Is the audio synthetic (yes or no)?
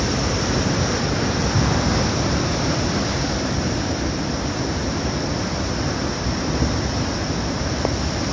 no